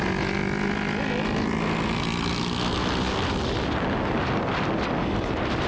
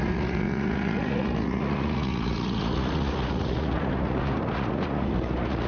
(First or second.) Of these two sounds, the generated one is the second